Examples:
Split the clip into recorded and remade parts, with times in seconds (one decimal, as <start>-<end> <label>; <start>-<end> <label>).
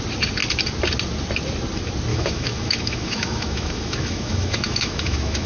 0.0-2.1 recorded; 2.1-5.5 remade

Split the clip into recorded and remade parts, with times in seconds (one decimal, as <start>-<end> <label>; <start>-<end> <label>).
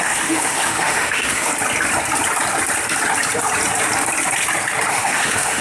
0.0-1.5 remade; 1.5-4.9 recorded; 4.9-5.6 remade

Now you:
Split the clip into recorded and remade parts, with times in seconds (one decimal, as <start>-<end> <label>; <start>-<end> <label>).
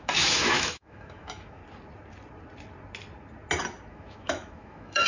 0.0-1.6 remade; 1.6-3.9 recorded; 3.9-5.1 remade